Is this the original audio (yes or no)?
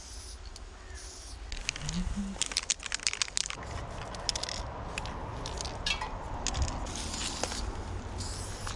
yes